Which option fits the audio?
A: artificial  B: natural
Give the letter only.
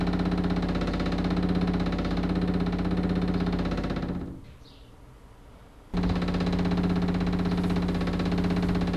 B